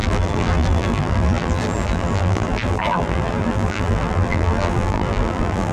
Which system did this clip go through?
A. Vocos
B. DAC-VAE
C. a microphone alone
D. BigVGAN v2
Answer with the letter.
D